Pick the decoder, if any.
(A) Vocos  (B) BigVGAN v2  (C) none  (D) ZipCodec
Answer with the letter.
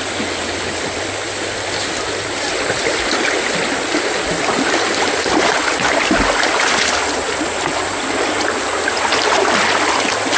B